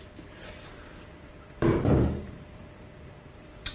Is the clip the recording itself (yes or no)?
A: no